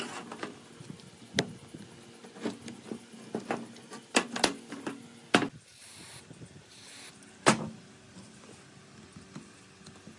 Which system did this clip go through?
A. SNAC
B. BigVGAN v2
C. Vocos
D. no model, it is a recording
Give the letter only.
D